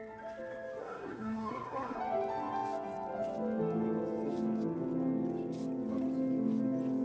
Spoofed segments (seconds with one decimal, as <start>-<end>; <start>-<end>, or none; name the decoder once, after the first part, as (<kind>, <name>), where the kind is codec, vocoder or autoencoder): 0.8-2.0 (codec, SNAC)